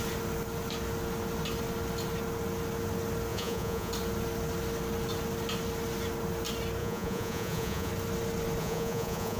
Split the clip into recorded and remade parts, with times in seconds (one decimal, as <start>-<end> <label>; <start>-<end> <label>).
0.0-3.3 recorded; 3.3-3.9 remade; 3.9-6.8 recorded; 6.8-7.9 remade; 7.9-8.6 recorded; 8.6-9.4 remade